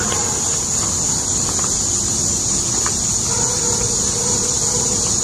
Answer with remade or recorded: recorded